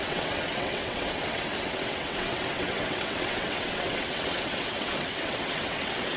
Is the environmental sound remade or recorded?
remade